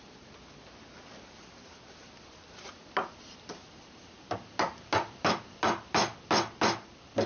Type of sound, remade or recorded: recorded